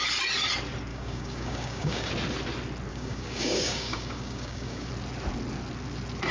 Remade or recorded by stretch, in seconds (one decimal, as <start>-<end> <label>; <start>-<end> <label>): 0.0-0.9 recorded; 0.9-2.1 remade; 2.1-2.9 recorded; 2.9-4.9 remade; 4.9-6.3 recorded